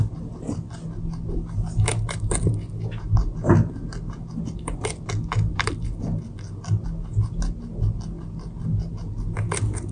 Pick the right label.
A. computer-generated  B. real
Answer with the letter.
B